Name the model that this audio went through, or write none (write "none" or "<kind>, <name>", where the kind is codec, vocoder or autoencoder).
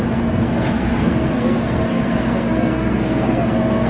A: codec, SNAC